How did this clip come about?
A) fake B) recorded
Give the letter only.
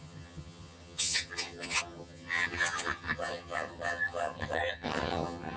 A